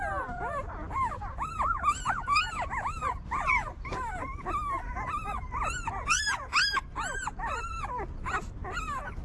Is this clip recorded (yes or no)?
yes